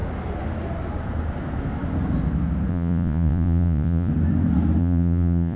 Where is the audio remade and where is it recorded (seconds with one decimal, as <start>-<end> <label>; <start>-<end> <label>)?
0.0-2.7 recorded; 2.7-4.1 remade; 4.1-4.8 recorded; 4.8-5.6 remade